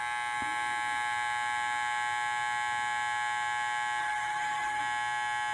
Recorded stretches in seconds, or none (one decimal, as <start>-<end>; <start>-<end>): 0.0-4.0; 4.8-5.5